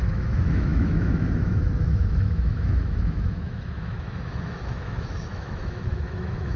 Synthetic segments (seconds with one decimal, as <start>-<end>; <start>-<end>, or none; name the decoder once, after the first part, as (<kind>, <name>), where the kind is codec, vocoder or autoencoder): 0.0-6.6 (autoencoder, DAC-VAE)